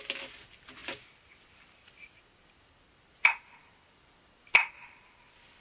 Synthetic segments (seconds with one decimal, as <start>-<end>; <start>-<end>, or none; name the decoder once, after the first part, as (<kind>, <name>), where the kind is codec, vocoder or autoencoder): none